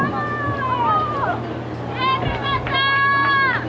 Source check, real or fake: real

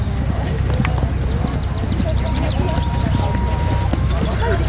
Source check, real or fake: real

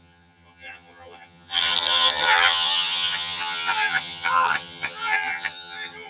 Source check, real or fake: fake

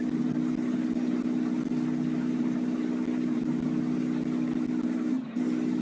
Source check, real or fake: real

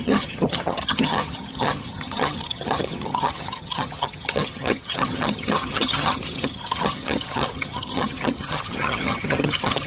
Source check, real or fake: fake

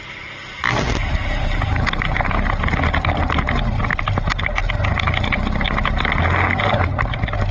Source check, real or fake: real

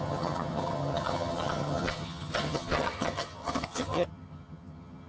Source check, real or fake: fake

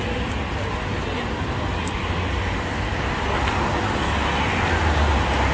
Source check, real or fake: real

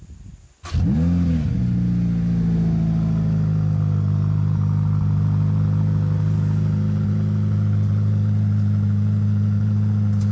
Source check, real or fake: real